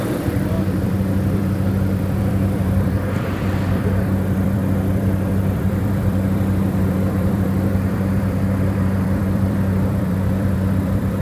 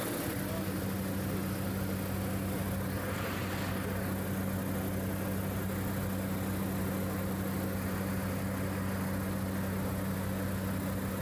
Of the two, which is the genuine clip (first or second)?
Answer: second